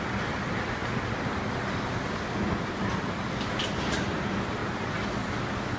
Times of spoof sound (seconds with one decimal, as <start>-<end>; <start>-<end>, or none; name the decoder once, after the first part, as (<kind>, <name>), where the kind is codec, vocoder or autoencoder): none